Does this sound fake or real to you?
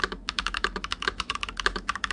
fake